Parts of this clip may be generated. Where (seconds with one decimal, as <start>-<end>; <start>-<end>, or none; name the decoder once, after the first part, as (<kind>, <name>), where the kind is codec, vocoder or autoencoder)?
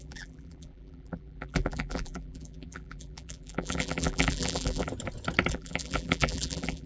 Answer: 0.0-4.9 (vocoder, BigVGAN v2); 5.5-6.9